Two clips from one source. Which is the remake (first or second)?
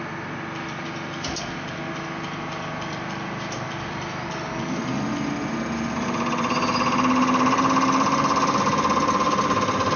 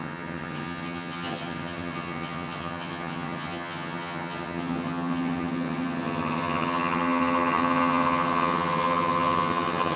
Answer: second